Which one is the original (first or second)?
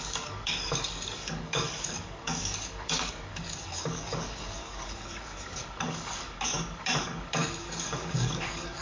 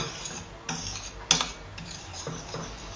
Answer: second